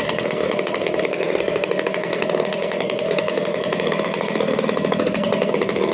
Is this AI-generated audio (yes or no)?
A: yes